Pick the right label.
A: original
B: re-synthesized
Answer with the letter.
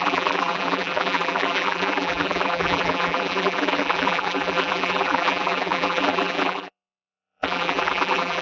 B